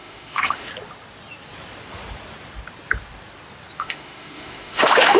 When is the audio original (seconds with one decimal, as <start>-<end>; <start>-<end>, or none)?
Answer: 0.7-3.8